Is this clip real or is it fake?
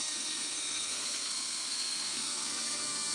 fake